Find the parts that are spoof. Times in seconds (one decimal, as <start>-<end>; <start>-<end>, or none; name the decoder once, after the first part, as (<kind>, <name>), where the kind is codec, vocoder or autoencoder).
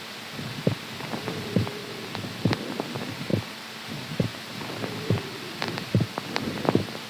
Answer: 0.0-1.8 (vocoder, BigVGAN v2); 2.8-7.1